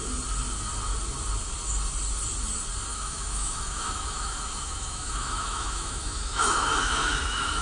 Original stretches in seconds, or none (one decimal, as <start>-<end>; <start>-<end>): 0.0-2.9